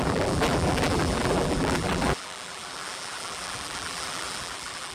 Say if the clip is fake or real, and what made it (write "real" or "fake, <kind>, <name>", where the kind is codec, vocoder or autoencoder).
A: fake, vocoder, BigVGAN v2